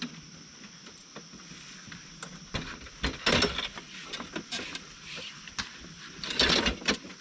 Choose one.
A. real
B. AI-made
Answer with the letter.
A